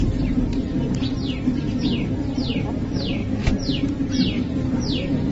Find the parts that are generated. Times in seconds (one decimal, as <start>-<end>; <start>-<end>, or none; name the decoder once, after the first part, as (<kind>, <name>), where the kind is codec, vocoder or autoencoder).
0.0-3.2 (vocoder, BigVGAN v2); 3.8-5.3